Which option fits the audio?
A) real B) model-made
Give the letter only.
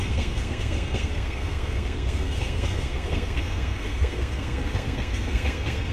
B